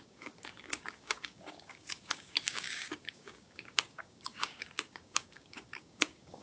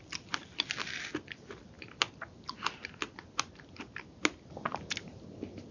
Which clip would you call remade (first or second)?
first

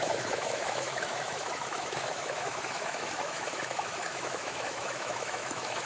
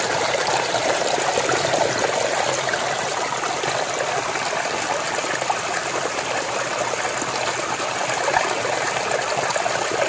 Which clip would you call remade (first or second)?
first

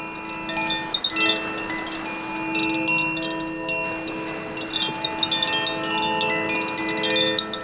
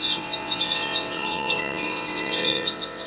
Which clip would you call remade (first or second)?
second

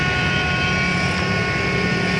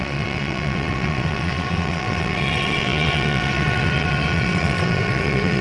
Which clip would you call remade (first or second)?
second